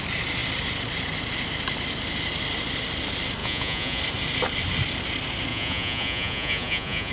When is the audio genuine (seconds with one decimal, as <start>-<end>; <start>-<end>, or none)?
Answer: 0.0-3.4; 4.0-5.5

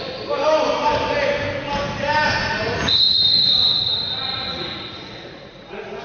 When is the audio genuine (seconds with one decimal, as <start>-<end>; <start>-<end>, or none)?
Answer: 0.0-2.4; 3.5-4.3

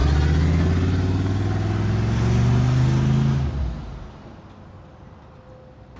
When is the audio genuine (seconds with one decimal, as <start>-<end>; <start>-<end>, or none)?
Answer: 0.0-6.0

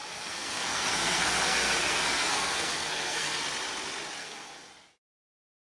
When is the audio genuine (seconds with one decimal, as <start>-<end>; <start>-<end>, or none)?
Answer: 3.4-4.2; 4.7-5.7